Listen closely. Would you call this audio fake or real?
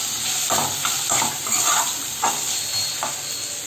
real